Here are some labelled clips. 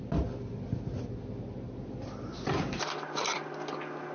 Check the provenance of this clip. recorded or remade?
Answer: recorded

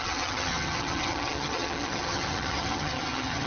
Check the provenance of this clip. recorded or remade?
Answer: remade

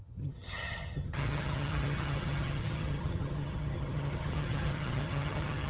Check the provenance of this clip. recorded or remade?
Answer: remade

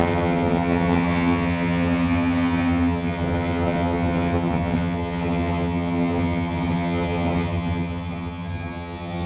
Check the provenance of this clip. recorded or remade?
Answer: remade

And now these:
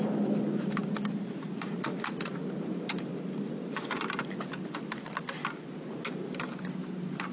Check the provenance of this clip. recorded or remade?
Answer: recorded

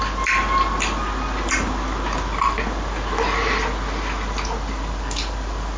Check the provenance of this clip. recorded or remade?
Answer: recorded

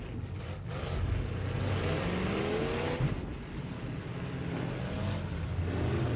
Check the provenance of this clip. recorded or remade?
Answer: recorded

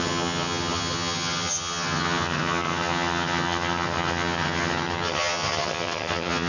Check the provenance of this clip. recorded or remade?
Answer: remade